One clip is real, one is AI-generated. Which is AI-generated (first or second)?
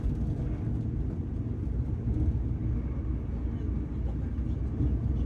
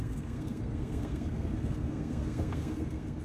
second